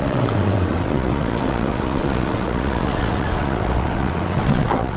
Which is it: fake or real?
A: fake